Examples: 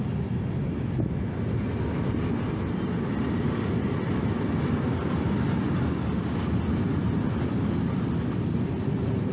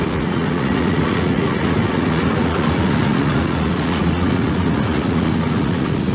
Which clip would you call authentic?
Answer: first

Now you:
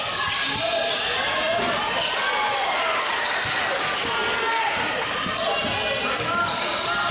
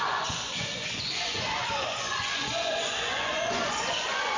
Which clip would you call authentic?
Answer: first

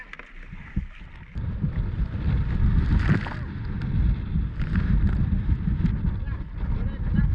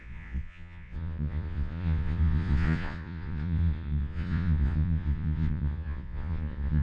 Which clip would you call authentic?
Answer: first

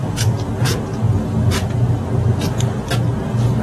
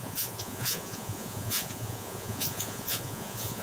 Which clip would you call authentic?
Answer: first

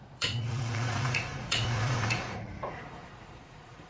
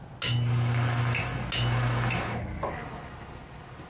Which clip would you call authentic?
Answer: second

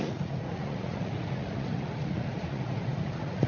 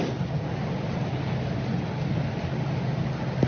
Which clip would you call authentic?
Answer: second